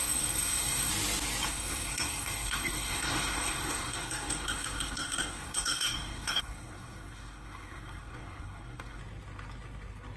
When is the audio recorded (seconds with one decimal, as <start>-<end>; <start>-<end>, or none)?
0.9-1.5; 9.0-10.2

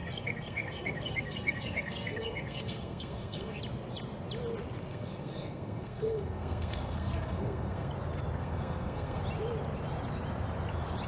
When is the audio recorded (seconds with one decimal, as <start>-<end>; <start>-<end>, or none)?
3.6-4.9; 7.9-8.4; 9.2-11.1